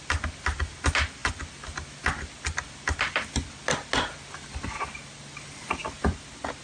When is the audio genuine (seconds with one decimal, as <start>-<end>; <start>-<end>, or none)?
0.0-6.6